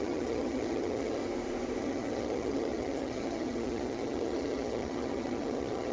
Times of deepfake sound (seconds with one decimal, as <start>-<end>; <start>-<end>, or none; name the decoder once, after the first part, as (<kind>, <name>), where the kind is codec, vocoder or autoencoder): 0.0-1.2 (vocoder, HiFi-GAN); 1.8-5.9